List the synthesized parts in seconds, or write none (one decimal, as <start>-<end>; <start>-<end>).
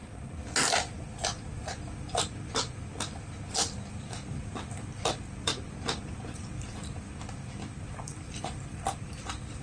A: 1.0-9.6